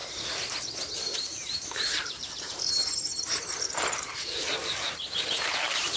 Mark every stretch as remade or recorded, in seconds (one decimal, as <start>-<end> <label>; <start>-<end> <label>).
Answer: 0.0-1.3 recorded; 1.3-4.1 remade; 4.1-4.5 recorded; 4.5-5.5 remade; 5.5-6.0 recorded